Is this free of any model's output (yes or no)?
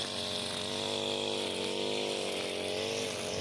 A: yes